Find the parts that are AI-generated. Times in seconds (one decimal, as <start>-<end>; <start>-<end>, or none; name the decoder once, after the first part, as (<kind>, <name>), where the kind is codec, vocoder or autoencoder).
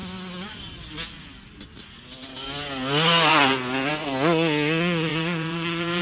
5.1-6.0 (vocoder, BigVGAN v2)